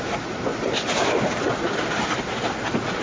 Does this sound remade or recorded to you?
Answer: recorded